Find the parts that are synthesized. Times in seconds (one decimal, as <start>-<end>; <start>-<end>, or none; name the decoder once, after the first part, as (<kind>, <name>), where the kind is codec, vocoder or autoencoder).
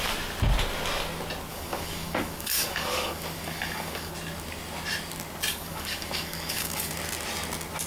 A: 1.5-4.1 (codec, DAC); 5.5-6.9